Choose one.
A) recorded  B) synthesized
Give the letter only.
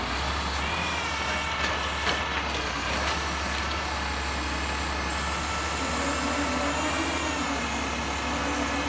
A